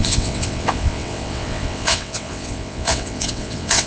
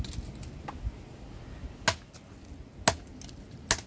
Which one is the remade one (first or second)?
first